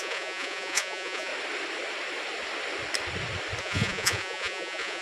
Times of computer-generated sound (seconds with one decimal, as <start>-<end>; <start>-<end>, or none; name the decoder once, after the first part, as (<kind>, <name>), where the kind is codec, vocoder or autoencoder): 0.0-1.3 (vocoder, Vocos); 3.6-5.0